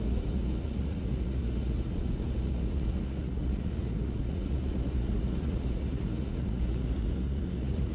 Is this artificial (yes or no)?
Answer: yes